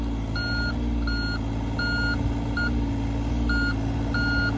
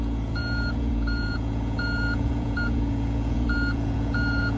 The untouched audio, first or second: first